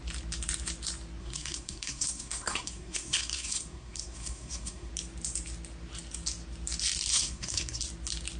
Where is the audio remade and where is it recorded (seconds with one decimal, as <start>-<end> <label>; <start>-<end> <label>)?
0.0-1.2 recorded; 1.2-4.9 remade; 4.9-7.1 recorded; 7.1-7.8 remade; 7.8-8.4 recorded